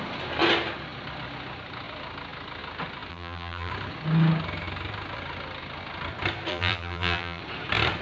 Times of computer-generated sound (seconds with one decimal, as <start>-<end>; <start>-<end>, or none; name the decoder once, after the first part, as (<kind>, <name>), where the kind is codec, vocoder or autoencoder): 3.1-3.7 (vocoder, BigVGAN v2); 6.5-7.4